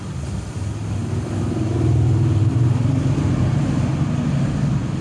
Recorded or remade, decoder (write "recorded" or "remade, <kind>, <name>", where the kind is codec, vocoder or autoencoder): recorded